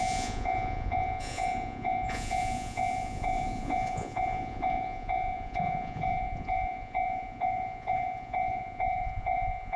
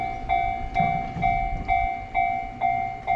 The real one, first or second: second